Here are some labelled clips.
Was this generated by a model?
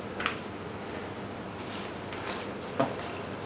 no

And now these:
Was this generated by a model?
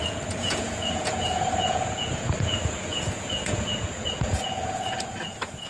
yes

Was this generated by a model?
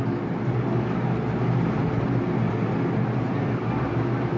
no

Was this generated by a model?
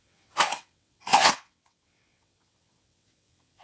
yes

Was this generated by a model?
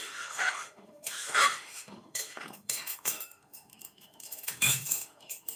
yes